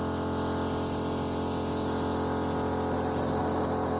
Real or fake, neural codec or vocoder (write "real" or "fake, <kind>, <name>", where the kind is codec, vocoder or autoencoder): real